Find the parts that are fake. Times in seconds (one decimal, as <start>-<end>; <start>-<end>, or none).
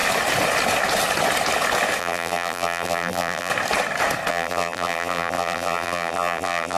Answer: 2.0-3.5; 4.3-6.8